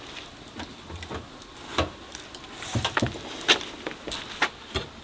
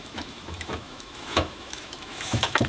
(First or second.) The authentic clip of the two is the first